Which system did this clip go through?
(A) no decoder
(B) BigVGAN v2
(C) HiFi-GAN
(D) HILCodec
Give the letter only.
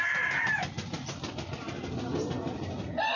A